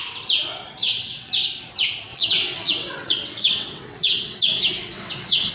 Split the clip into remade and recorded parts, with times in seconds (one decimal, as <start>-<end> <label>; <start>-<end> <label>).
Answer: 0.0-0.8 recorded; 0.8-1.3 remade; 1.3-2.1 recorded; 2.1-5.5 remade